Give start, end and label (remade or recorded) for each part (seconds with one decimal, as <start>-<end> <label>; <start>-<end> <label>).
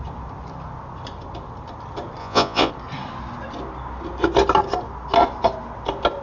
0.0-2.2 recorded; 2.2-2.7 remade; 2.7-6.2 recorded